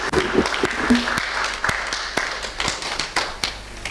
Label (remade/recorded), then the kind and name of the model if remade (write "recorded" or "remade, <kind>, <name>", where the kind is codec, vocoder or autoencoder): recorded